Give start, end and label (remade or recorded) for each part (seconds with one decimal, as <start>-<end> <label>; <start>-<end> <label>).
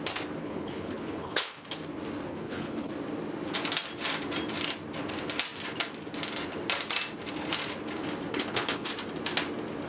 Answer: 0.0-0.4 recorded; 0.4-1.7 remade; 1.7-2.3 recorded; 2.3-2.9 remade; 2.9-8.3 recorded; 8.3-8.9 remade; 8.9-9.9 recorded